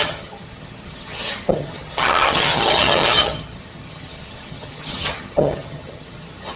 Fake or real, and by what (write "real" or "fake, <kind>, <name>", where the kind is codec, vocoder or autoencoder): fake, vocoder, HiFi-GAN